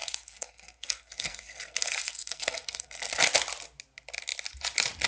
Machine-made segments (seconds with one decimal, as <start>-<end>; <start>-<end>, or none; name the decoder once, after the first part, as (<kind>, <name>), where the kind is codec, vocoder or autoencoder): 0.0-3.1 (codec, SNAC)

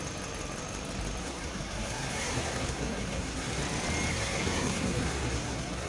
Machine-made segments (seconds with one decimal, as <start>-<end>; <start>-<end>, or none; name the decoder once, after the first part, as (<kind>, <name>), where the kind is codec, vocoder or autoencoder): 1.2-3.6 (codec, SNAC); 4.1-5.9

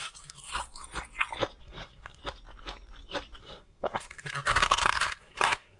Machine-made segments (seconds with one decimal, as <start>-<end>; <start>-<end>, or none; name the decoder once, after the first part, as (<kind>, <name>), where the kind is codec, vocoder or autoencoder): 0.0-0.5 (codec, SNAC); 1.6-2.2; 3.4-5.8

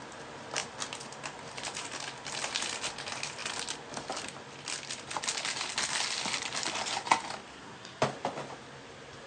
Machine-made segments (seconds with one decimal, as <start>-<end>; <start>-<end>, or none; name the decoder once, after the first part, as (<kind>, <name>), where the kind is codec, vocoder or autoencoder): 7.5-8.0 (codec, SNAC)